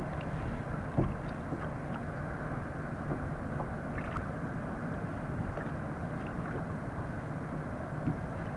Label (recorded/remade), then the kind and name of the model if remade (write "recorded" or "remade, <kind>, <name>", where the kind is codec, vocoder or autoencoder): recorded